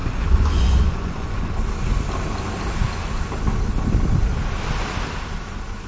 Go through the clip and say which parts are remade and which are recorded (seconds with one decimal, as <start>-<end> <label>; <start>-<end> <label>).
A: 0.0-1.5 remade; 1.5-5.9 recorded